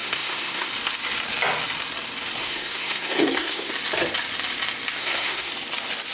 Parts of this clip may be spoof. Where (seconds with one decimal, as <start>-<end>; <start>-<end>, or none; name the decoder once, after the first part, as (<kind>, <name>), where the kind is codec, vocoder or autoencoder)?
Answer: 0.0-0.7 (codec, SNAC); 2.4-3.7; 5.0-5.5